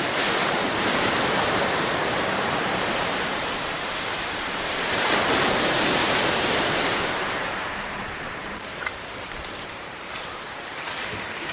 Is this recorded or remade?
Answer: remade